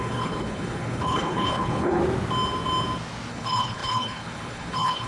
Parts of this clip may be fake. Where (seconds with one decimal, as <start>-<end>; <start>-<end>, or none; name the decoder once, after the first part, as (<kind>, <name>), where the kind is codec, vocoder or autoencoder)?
0.0-2.0 (codec, HILCodec); 3.3-5.1